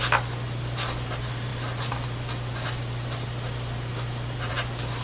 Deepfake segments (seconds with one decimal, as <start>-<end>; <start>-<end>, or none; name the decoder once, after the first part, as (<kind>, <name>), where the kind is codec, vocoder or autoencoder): none